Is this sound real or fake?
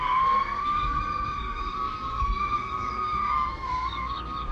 fake